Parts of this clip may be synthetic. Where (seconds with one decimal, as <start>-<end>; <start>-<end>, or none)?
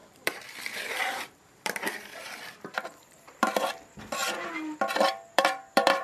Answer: 0.0-4.2; 5.0-6.0